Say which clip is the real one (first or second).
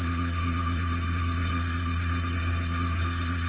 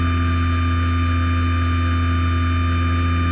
second